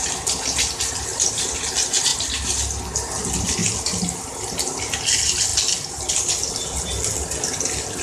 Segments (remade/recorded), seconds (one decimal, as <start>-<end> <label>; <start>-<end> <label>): 0.0-1.1 recorded; 1.1-1.7 remade; 1.7-2.1 recorded; 2.1-2.8 remade; 2.8-3.6 recorded; 3.6-4.2 remade; 4.2-5.5 recorded; 5.5-7.3 remade; 7.3-8.0 recorded